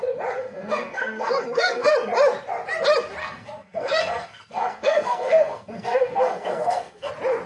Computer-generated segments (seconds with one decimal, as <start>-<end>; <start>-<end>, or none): 0.4-1.9; 3.2-7.1